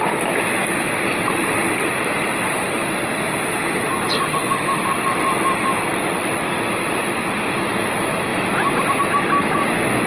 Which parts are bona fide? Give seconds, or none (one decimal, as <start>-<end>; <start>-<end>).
0.0-10.1